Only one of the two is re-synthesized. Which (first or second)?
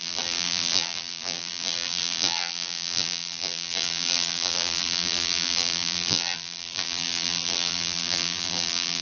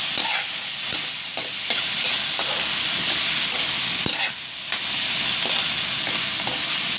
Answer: first